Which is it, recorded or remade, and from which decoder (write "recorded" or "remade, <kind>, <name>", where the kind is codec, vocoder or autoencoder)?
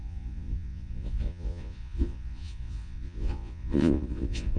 remade, vocoder, Vocos